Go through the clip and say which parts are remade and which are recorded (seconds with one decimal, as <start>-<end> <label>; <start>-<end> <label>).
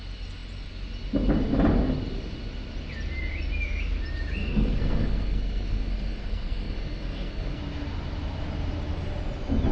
0.0-4.4 recorded; 4.4-7.6 remade; 7.6-9.7 recorded